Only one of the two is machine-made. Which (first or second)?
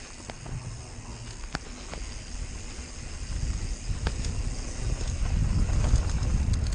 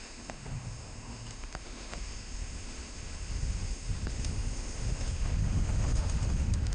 second